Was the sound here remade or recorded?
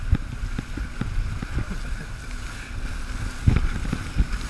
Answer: recorded